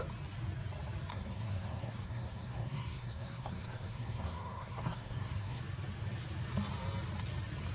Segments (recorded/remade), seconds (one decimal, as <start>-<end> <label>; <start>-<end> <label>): 0.0-1.1 recorded; 1.1-5.6 remade; 5.6-7.7 recorded